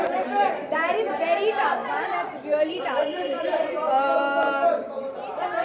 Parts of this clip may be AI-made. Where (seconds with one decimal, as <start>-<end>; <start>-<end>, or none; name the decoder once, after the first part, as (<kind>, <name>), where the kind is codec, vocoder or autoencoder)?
0.0-5.6 (vocoder, BigVGAN v2)